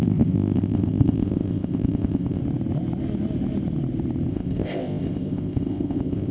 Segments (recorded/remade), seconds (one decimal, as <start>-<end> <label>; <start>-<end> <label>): 0.0-2.4 remade; 2.4-4.3 recorded; 4.3-6.3 remade